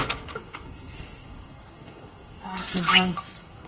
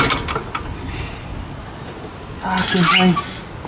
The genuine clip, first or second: second